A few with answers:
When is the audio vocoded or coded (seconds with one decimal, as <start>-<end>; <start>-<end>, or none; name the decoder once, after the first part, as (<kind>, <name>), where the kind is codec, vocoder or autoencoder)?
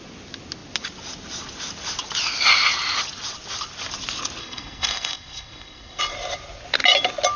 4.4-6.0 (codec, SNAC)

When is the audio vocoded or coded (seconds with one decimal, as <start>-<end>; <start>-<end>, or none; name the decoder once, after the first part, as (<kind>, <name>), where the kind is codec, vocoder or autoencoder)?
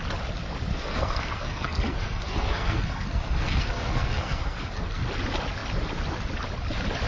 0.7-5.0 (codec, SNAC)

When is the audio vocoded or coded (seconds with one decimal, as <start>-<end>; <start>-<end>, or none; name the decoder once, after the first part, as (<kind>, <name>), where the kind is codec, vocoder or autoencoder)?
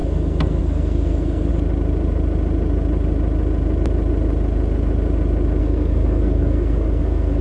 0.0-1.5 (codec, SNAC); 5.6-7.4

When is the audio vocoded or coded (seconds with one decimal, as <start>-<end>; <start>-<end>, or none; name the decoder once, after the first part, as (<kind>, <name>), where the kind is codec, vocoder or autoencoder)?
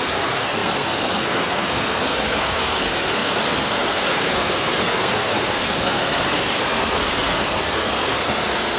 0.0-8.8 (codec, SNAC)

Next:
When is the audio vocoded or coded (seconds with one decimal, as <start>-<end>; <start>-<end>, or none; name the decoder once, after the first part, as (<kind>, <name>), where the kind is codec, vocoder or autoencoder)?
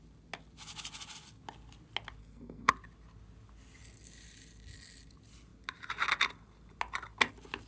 2.2-2.7 (codec, SNAC)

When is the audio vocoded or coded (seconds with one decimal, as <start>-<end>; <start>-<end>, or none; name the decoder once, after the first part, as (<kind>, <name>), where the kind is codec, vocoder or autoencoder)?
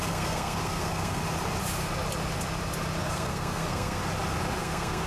0.0-1.2 (codec, SNAC); 3.1-4.0; 4.6-5.1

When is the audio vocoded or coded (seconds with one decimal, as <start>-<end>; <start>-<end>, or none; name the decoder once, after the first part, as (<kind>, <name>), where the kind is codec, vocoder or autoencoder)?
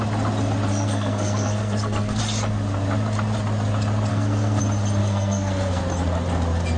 0.7-2.2 (codec, SNAC); 4.1-4.6; 5.0-5.8